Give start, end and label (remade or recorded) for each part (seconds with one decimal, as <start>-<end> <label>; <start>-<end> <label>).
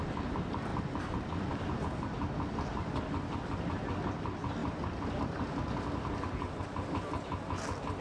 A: 0.0-0.7 recorded; 0.7-1.8 remade; 1.8-8.0 recorded